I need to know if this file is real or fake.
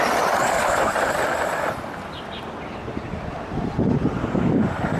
real